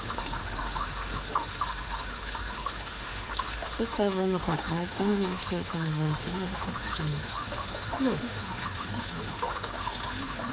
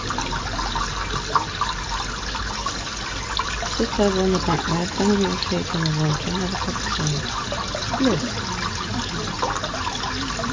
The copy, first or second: first